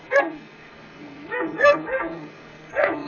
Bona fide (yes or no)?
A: no